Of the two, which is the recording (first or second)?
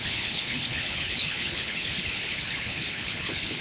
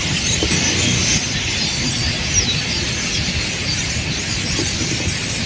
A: second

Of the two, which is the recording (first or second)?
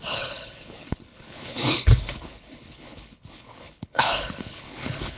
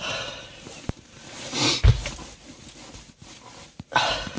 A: second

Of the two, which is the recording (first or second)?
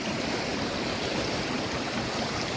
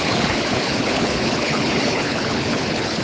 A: first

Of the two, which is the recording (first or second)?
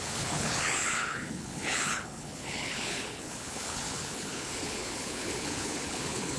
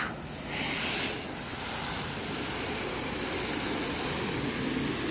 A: second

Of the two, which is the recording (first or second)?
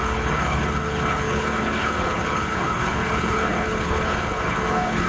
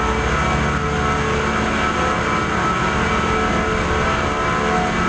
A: second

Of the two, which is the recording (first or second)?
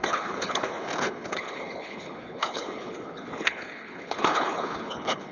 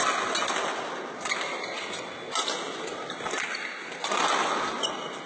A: second